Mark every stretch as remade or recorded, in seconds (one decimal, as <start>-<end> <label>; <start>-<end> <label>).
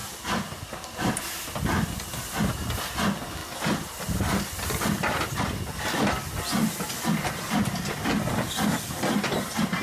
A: 0.0-9.8 recorded